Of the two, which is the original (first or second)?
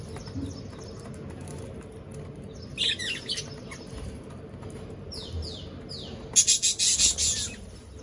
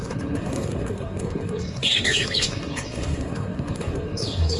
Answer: first